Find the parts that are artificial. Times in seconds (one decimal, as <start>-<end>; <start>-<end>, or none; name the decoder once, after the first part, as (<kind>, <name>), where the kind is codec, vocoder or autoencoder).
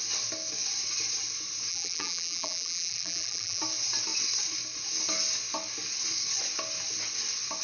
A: 1.7-3.6 (vocoder, BigVGAN v2)